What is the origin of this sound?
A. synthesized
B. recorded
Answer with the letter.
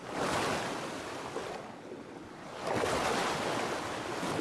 B